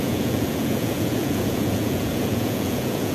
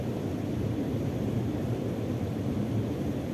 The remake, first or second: first